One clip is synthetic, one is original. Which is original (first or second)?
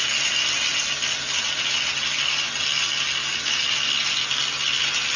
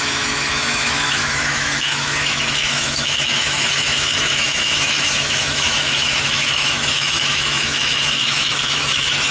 first